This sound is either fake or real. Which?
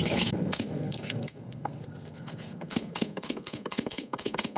fake